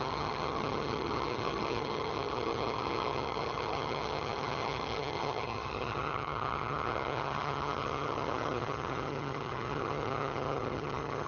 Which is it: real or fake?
fake